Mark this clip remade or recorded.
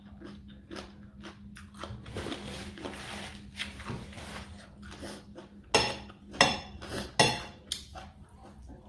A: recorded